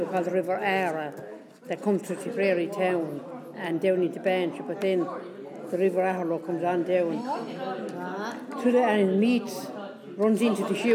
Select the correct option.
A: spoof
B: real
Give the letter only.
B